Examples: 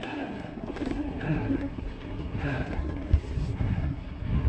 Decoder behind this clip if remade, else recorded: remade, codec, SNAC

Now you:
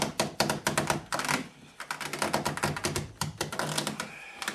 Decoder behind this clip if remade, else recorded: recorded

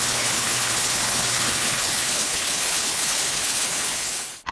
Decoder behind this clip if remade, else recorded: remade, codec, HILCodec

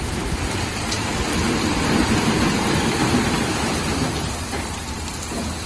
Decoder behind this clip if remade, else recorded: remade, vocoder, BigVGAN v2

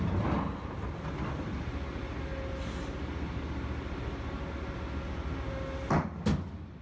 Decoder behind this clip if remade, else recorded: recorded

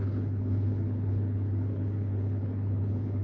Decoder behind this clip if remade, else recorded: remade, codec, HILCodec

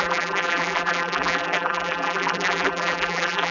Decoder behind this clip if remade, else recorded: remade, vocoder, BigVGAN v2